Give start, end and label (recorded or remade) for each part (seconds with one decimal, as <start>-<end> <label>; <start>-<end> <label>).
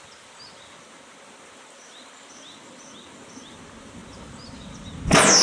0.0-5.4 recorded